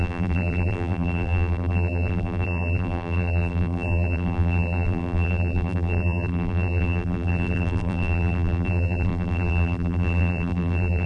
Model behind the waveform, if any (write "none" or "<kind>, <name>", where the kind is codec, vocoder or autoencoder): vocoder, BigVGAN v2